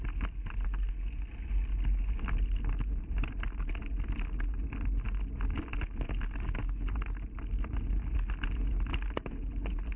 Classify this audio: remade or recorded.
recorded